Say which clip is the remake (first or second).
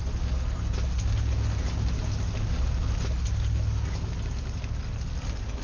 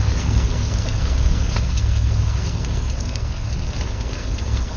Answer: second